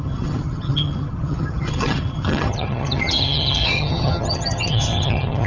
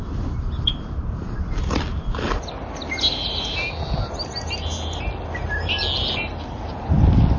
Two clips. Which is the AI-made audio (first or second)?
first